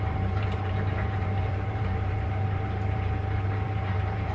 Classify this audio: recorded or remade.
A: remade